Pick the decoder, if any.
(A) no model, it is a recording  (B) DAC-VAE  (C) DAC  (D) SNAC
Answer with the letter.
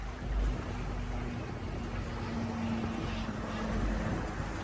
A